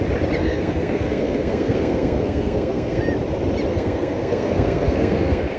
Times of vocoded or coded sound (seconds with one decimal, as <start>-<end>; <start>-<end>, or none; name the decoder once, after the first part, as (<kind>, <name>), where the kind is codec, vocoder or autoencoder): 0.4-3.0 (codec, SNAC); 3.7-5.6